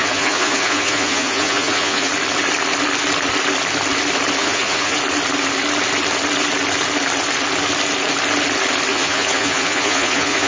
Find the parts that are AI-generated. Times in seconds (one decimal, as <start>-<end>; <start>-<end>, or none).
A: 0.0-2.1; 4.4-5.0; 8.9-10.5